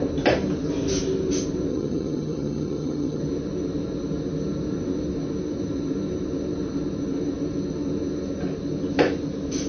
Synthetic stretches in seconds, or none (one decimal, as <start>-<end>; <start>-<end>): 1.7-3.2